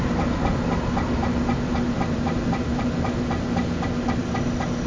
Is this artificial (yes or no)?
no